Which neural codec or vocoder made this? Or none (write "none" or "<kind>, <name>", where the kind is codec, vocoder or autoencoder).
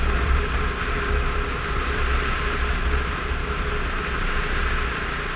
none